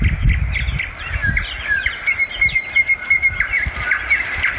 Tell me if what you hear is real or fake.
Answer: fake